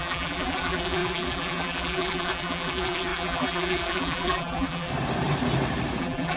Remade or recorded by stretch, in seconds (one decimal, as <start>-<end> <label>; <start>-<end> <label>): 0.0-4.9 remade; 4.9-6.0 recorded; 6.0-6.4 remade